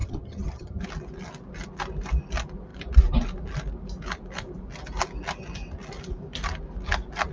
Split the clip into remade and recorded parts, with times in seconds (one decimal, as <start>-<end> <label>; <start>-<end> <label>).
0.0-0.8 remade; 0.8-7.3 recorded